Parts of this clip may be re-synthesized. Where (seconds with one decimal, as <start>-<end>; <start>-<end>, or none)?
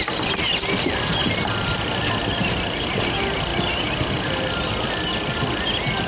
none